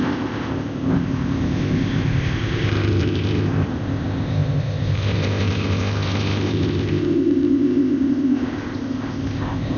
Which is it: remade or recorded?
remade